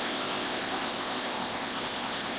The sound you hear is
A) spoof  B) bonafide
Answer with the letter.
A